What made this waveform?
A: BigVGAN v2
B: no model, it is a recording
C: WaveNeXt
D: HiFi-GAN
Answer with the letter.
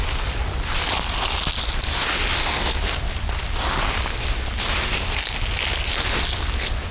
B